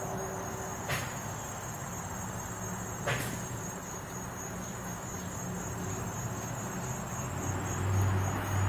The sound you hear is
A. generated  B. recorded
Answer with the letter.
B